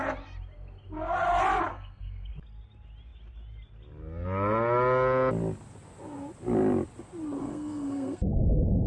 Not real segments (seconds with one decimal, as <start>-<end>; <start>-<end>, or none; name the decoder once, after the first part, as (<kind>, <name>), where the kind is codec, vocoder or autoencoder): 1.7-2.3 (codec, SNAC); 7.4-8.3